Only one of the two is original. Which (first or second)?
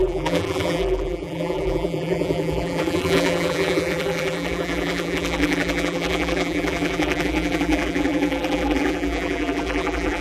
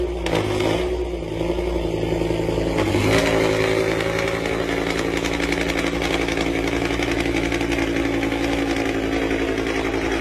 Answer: second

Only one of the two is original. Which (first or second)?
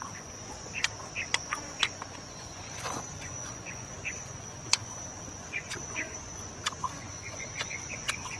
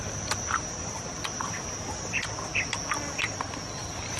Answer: second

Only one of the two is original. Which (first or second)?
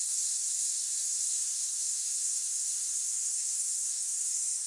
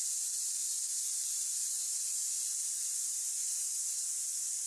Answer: second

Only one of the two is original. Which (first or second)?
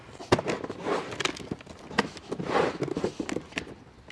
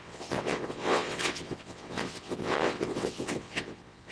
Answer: first